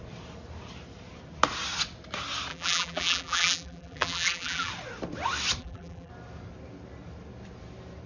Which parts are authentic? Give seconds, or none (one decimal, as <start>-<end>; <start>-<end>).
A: 0.0-2.5; 4.7-5.6; 6.1-8.1